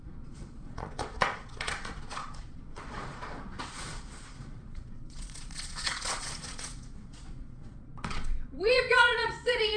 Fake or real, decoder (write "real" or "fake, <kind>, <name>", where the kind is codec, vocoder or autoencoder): fake, vocoder, Vocos